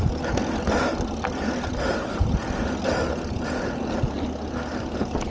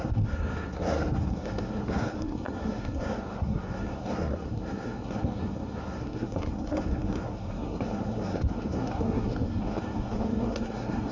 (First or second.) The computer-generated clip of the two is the second